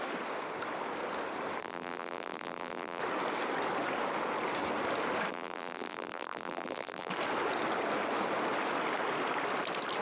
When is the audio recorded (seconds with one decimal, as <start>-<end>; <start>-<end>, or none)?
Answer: 0.0-1.6; 3.0-5.3; 7.1-10.0